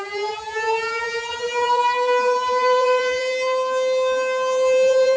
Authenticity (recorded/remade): remade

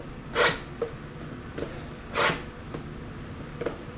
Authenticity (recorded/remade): recorded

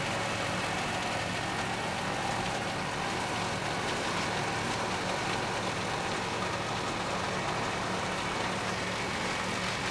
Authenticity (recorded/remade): recorded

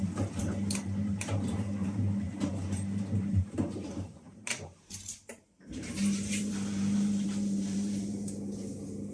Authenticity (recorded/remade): remade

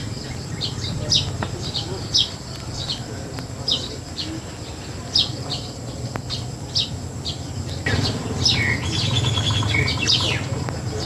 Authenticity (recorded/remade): recorded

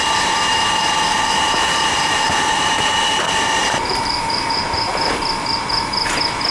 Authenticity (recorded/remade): remade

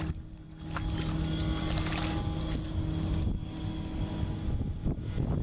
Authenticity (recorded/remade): recorded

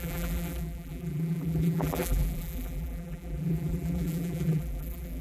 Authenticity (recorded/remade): remade